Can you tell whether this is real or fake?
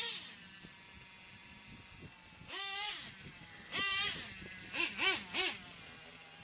real